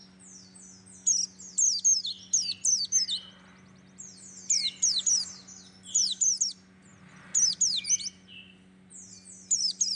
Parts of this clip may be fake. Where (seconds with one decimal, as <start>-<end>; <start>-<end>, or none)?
none